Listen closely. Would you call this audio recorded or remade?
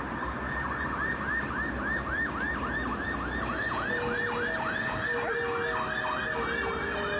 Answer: recorded